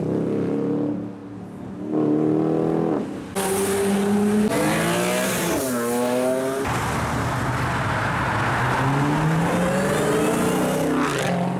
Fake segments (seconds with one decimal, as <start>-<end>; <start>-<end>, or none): none